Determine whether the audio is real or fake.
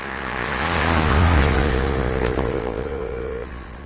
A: fake